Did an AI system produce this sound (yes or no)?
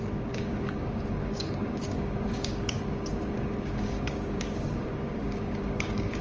yes